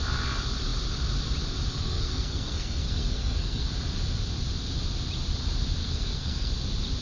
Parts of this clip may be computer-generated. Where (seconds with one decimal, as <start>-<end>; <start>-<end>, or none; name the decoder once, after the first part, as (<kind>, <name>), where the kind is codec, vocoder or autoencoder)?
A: 1.7-3.7 (codec, SNAC); 5.8-6.5